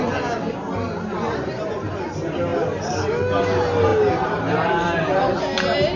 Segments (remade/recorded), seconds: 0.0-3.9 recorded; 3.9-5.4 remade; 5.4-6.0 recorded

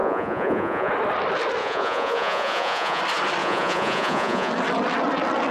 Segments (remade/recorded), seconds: 0.0-0.9 remade; 0.9-1.6 recorded; 1.6-3.0 remade; 3.0-3.4 recorded; 3.4-4.5 remade; 4.5-5.5 recorded

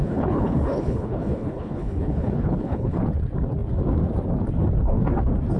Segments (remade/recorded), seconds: 0.0-3.0 remade; 3.0-5.6 recorded

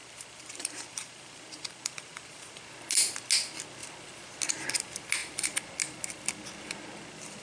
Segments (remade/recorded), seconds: 0.0-2.6 remade; 2.6-7.4 recorded

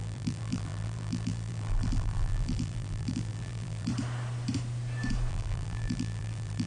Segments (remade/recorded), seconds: 0.0-3.9 remade; 3.9-5.3 recorded; 5.3-6.7 remade

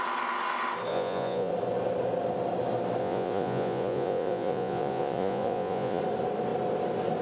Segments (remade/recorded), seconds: 0.0-0.9 recorded; 0.9-1.5 remade; 1.5-3.0 recorded; 3.0-6.0 remade; 6.0-7.2 recorded